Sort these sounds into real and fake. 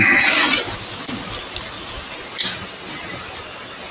real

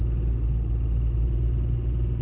real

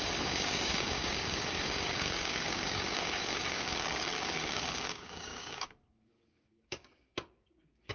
fake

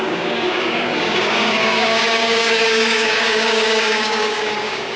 fake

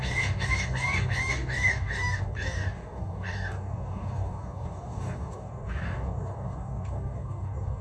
fake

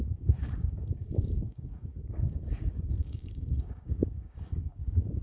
fake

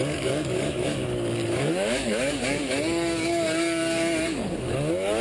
fake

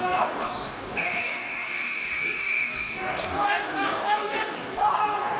fake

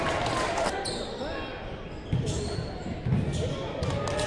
real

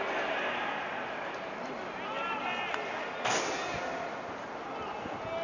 real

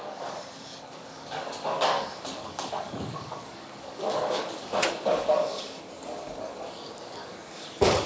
fake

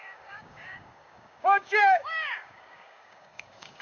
fake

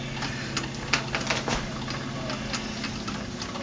real